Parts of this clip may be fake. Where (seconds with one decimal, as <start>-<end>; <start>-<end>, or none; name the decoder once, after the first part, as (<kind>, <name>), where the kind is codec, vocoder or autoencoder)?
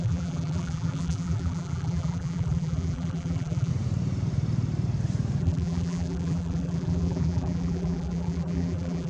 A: 0.0-3.7 (vocoder, BigVGAN v2); 5.4-9.1